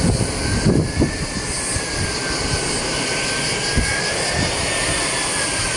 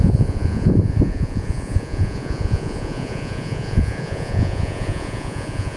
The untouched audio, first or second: first